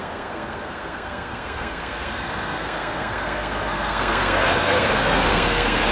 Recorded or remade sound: remade